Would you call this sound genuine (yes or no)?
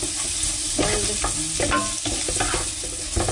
yes